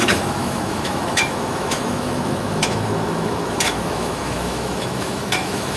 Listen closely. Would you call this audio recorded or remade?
remade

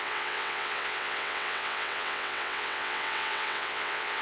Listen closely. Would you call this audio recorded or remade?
remade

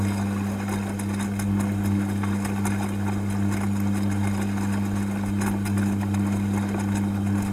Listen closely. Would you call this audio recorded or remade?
recorded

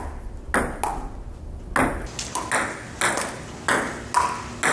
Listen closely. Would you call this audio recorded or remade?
recorded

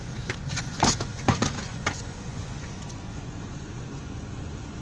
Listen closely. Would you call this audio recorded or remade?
remade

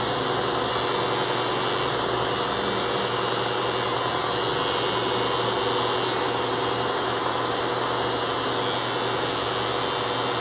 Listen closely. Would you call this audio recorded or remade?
recorded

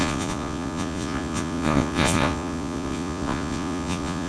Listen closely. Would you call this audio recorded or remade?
remade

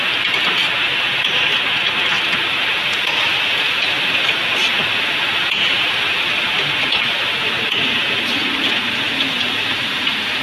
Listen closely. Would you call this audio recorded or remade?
recorded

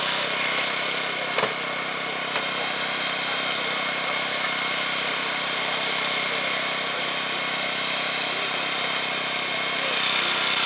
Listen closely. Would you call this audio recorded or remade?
remade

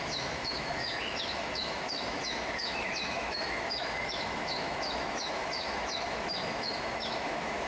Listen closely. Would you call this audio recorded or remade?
remade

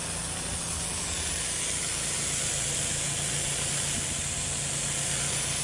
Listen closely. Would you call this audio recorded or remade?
recorded